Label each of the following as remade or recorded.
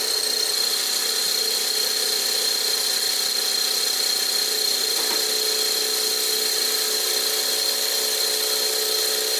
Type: recorded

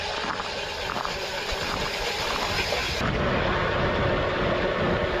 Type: recorded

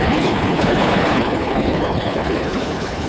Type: remade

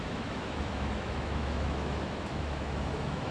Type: remade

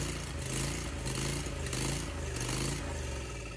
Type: recorded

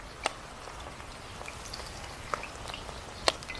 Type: recorded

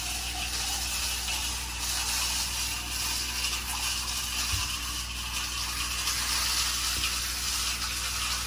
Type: recorded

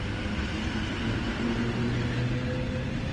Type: recorded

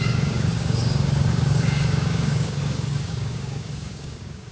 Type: remade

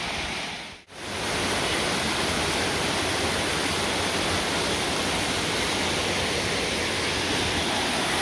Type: recorded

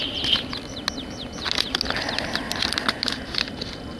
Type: recorded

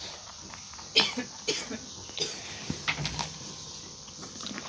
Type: recorded